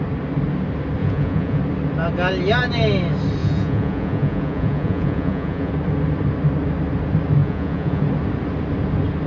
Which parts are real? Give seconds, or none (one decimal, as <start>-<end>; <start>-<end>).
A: 0.0-1.0; 1.6-3.4; 5.7-7.4; 8.0-9.3